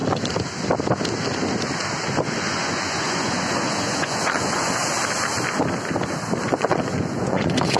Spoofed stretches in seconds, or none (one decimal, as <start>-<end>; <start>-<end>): 2.4-4.8; 6.4-7.8